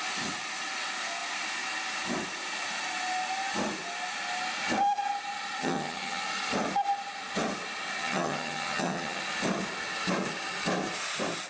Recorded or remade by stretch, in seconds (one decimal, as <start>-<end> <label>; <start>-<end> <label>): 0.0-5.6 recorded; 5.6-6.2 remade; 6.2-8.0 recorded; 8.0-9.2 remade; 9.2-11.5 recorded